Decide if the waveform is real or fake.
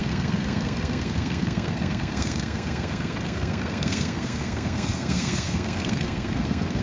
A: fake